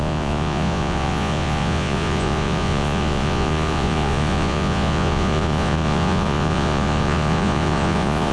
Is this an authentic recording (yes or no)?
no